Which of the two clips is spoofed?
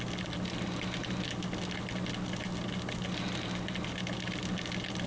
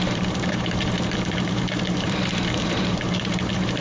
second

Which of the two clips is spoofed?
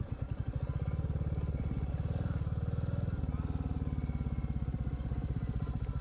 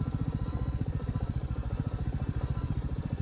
second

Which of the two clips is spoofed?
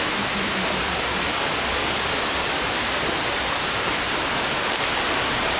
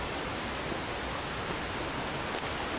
first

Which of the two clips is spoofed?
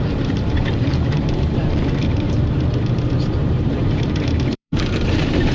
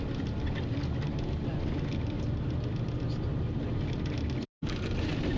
first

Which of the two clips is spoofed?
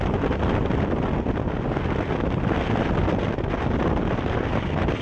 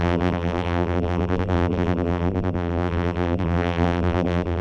second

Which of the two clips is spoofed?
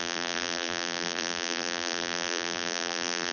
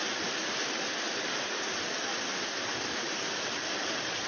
first